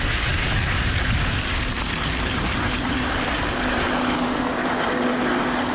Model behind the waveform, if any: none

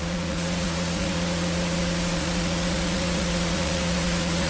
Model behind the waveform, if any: vocoder, Vocos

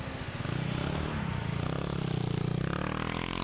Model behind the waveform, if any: none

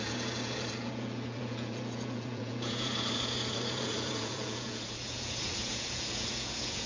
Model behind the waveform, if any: vocoder, Vocos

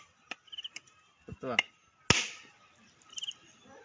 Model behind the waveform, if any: none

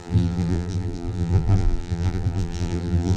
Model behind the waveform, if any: vocoder, BigVGAN v2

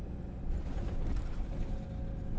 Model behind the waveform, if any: none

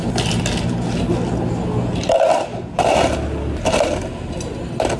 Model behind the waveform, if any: none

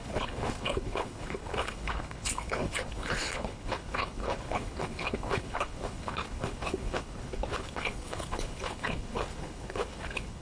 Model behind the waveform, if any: codec, HILCodec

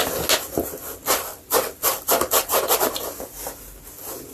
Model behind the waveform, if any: none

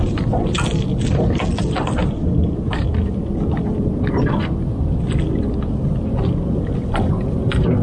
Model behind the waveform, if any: none